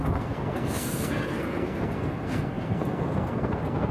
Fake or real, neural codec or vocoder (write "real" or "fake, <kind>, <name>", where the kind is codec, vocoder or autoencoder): fake, codec, SNAC